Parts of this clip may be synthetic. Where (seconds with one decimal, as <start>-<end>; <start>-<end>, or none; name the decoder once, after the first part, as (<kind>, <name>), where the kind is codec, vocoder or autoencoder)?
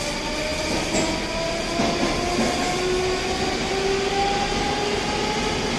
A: none